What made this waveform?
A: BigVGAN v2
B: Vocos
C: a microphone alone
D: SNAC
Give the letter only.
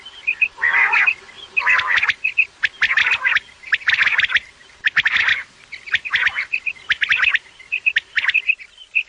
C